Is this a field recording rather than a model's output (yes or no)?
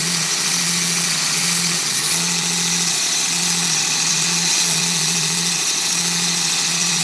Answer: no